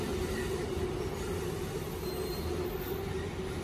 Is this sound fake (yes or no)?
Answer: no